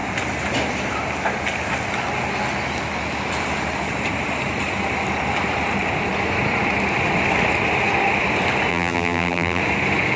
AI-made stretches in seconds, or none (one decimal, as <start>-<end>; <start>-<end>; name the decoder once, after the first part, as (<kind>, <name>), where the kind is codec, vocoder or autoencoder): 8.7-9.6 (vocoder, BigVGAN v2)